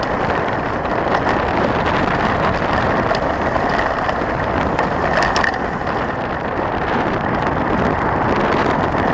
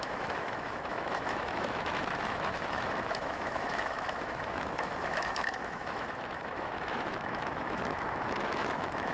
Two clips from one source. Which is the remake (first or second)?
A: second